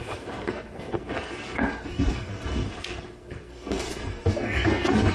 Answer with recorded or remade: remade